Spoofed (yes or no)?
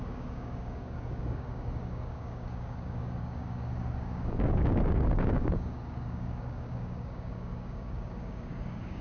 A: yes